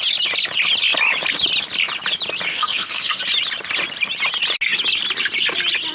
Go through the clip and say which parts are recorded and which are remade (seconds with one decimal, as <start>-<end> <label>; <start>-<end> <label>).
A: 0.0-2.5 recorded; 2.5-3.2 remade; 3.2-5.9 recorded